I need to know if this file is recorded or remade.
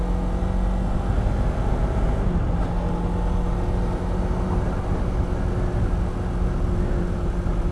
recorded